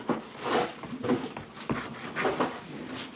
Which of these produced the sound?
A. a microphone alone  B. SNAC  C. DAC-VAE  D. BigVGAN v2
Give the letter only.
A